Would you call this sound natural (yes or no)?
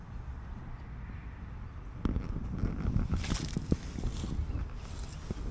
yes